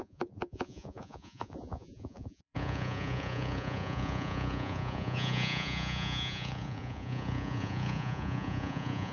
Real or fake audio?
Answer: fake